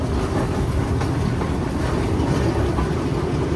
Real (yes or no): yes